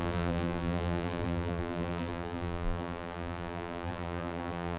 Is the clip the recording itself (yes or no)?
no